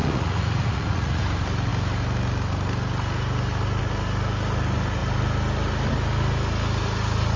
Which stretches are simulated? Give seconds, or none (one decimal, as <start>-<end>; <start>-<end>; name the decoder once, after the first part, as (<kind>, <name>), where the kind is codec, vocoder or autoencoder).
0.0-1.2 (vocoder, Vocos)